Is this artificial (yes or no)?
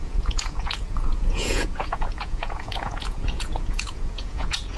yes